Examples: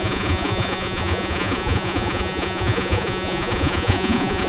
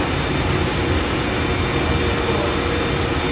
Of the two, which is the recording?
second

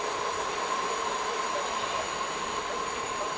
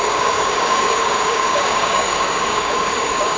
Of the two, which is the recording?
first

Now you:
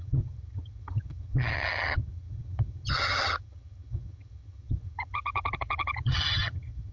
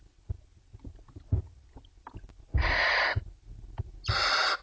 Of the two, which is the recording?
second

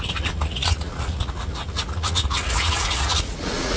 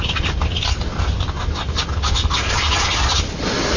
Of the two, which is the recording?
second